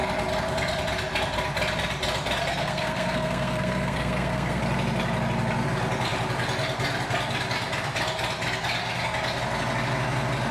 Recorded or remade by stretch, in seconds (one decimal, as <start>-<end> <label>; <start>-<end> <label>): 0.0-2.5 recorded; 2.5-4.6 remade; 4.6-10.5 recorded